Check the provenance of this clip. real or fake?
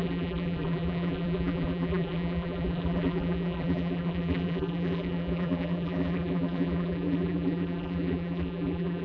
fake